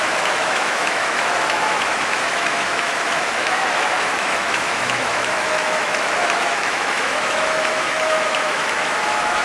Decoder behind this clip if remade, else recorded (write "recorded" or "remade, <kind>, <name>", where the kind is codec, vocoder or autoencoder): remade, autoencoder, DAC-VAE